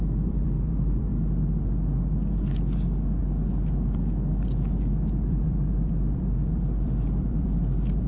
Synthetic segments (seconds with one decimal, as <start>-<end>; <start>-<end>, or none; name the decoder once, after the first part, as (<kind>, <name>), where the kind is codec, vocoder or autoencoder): 0.0-1.1 (vocoder, BigVGAN v2); 5.2-8.1